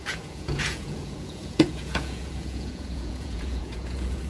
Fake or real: fake